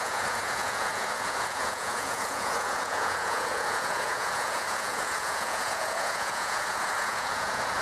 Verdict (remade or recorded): remade